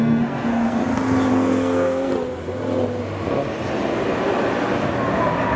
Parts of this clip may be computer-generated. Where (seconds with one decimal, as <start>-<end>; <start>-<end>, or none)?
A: 0.0-0.8; 1.3-2.1